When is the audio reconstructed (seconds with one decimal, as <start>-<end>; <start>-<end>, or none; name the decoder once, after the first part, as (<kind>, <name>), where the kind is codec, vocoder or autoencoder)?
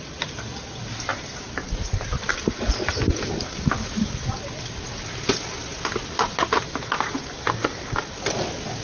1.1-2.3 (vocoder, BigVGAN v2)